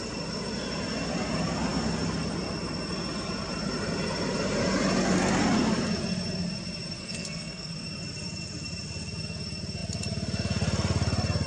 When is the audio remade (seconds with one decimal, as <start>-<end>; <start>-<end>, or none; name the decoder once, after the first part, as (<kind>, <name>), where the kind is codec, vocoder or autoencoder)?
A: 7.0-7.7 (codec, SNAC)